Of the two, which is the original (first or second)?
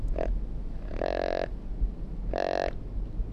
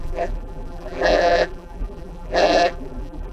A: first